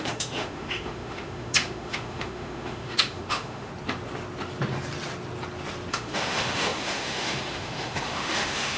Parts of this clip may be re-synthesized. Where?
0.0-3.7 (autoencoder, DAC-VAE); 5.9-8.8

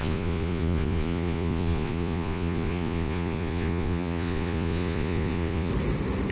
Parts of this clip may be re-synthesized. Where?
0.0-5.7 (vocoder, Vocos)